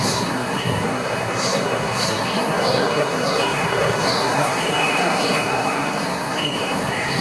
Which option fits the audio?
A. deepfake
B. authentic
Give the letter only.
A